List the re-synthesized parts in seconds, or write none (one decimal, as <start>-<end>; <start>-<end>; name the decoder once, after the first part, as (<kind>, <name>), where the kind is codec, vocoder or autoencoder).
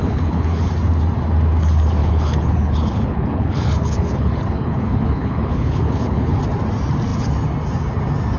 0.0-0.7 (codec, HILCodec); 2.0-6.4